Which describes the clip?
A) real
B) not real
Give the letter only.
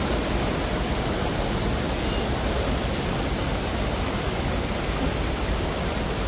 A